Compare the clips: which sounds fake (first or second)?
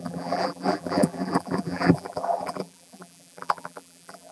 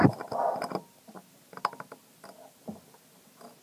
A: first